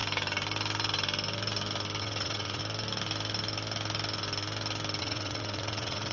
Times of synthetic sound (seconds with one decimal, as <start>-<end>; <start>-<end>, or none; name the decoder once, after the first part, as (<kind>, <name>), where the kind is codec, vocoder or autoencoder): 2.0-2.6 (vocoder, WaveNeXt); 5.0-6.1